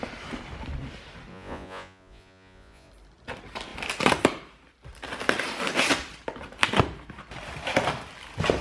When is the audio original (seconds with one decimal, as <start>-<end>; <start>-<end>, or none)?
0.0-1.3; 2.9-8.6